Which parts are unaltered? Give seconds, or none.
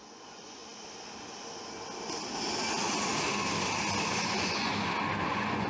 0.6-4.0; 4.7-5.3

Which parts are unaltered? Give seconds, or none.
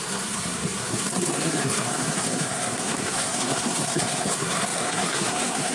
none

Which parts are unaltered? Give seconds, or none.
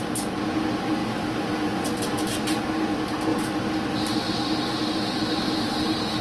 0.0-6.2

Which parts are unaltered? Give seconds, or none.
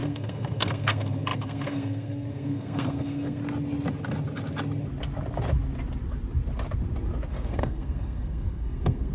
3.4-7.3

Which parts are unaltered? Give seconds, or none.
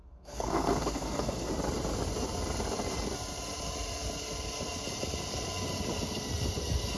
1.5-7.0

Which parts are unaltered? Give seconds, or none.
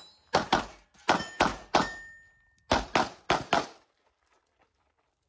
0.0-5.3